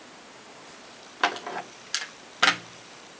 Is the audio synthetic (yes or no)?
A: no